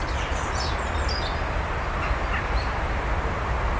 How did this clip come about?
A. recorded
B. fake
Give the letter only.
A